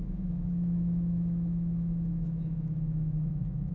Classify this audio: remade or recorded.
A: remade